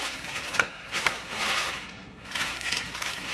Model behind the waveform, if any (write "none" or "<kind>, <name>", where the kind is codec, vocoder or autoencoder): codec, SNAC